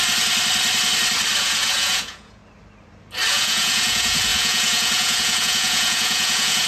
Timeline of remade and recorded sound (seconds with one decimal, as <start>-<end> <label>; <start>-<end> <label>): 0.0-1.4 recorded; 1.4-2.4 remade; 2.4-3.3 recorded; 3.3-6.7 remade